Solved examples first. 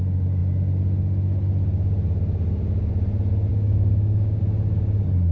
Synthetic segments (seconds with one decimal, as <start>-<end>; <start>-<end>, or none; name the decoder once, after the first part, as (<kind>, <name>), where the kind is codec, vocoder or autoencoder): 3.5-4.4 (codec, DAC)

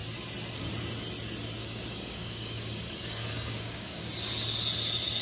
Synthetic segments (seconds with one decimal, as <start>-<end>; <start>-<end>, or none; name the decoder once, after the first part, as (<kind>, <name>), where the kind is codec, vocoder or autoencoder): 1.6-4.1 (codec, DAC)

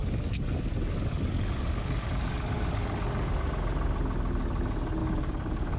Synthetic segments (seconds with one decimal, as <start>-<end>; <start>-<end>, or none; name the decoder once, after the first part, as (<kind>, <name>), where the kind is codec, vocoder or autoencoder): 0.0-3.5 (codec, DAC); 5.0-5.8